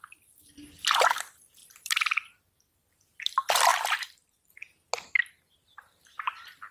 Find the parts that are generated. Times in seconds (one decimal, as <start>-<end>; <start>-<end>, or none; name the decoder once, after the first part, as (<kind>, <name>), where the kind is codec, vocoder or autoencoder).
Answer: 1.6-2.4 (vocoder, BigVGAN v2); 3.7-4.5